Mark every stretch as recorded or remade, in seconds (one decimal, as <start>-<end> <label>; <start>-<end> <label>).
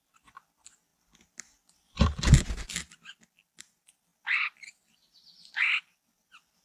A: 0.0-6.6 recorded